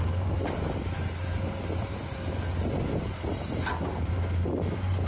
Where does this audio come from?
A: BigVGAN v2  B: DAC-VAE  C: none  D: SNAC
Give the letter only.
C